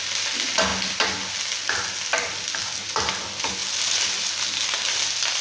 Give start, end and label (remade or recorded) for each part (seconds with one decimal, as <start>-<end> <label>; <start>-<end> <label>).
0.0-5.4 recorded